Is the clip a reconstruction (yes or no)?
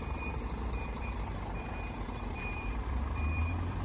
yes